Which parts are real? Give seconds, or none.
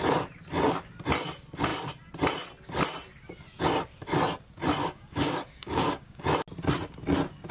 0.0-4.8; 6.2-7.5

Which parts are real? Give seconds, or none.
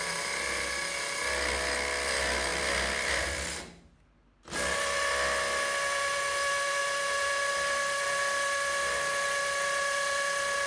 0.0-10.7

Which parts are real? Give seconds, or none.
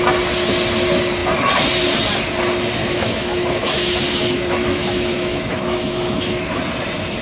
0.0-2.8; 6.6-7.2